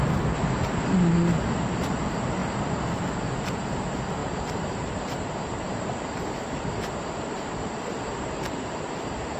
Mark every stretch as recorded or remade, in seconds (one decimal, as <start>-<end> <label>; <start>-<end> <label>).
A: 0.0-9.4 remade

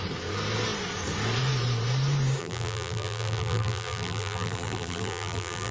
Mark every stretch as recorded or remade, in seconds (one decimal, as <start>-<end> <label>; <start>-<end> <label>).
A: 0.0-2.4 recorded; 2.4-5.7 remade

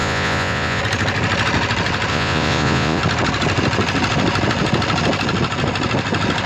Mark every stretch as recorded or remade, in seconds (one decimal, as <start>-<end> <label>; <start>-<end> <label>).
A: 0.0-0.8 remade; 0.8-2.1 recorded; 2.1-3.0 remade; 3.0-6.5 recorded